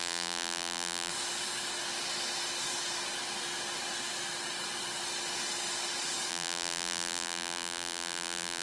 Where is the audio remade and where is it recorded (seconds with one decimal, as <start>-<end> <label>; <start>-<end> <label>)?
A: 0.0-1.1 remade; 1.1-6.3 recorded; 6.3-8.6 remade